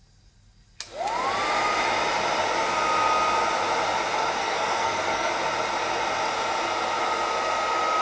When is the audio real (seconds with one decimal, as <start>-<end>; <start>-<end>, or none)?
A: 0.0-4.4; 5.3-8.0